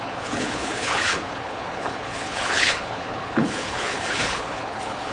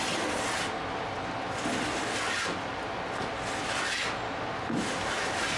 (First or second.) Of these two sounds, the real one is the second